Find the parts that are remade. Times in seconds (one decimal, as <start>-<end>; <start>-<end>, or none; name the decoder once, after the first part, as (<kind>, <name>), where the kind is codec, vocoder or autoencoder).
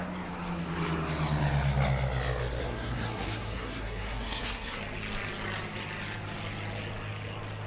2.6-4.8 (codec, SNAC)